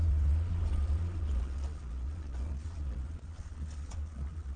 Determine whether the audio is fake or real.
fake